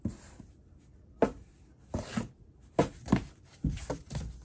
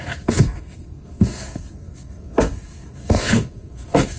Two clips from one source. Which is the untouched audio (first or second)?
first